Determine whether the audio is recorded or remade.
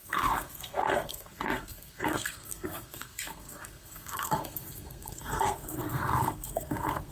remade